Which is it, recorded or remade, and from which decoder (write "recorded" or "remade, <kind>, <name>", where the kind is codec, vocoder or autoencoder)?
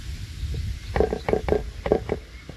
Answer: recorded